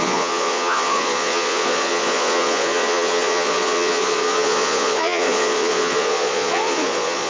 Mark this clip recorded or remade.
remade